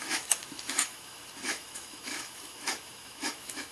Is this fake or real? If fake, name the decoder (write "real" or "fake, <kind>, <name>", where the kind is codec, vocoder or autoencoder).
fake, autoencoder, DAC-VAE